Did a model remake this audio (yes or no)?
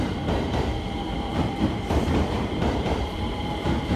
yes